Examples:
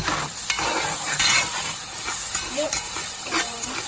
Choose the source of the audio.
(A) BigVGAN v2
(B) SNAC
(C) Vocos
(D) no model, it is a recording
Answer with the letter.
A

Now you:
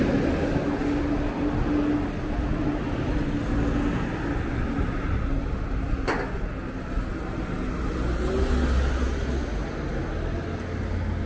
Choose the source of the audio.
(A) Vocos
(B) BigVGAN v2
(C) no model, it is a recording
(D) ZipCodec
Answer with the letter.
C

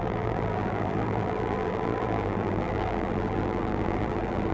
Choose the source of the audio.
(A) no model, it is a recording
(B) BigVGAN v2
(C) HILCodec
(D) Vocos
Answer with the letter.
B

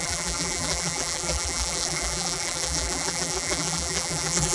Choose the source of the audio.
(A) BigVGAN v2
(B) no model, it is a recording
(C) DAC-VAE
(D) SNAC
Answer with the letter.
A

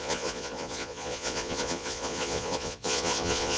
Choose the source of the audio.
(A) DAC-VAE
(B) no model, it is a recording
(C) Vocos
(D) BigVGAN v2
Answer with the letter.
C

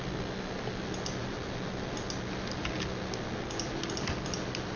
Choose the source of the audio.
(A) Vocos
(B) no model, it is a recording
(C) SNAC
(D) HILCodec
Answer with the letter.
B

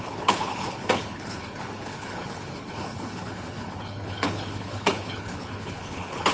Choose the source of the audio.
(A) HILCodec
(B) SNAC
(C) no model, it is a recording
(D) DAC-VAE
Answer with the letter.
A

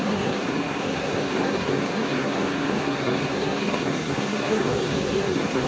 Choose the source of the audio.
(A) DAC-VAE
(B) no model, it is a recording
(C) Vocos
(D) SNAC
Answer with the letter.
D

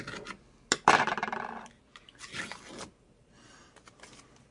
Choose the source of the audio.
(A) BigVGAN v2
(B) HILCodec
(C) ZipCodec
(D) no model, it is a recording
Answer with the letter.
D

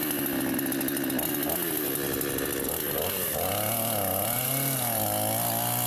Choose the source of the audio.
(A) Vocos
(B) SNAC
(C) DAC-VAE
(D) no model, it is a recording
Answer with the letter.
D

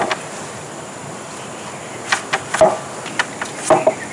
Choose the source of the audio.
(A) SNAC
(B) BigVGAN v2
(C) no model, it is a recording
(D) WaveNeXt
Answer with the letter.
C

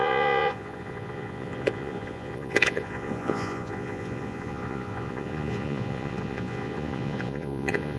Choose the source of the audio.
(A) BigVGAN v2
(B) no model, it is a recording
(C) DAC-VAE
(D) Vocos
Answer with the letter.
D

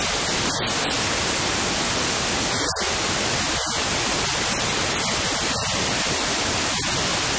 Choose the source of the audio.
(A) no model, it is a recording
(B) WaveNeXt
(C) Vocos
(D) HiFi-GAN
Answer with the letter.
A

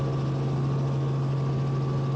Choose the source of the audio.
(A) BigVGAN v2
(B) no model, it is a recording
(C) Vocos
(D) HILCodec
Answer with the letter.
B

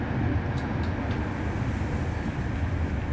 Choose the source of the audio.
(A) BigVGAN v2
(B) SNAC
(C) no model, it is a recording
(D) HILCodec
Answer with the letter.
C